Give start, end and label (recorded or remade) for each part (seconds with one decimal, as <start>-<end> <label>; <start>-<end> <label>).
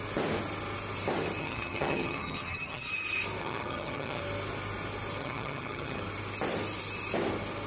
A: 0.0-1.4 recorded; 1.4-2.9 remade; 2.9-3.4 recorded; 3.4-4.2 remade; 4.2-5.2 recorded; 5.2-6.0 remade; 6.0-7.7 recorded